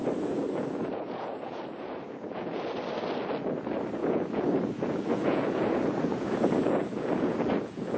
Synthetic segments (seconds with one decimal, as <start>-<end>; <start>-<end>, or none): 0.0-2.6; 4.0-8.0